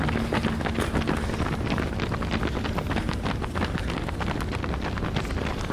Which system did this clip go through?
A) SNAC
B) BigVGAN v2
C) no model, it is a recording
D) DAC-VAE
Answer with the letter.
C